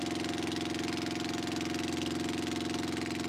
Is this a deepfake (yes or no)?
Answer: no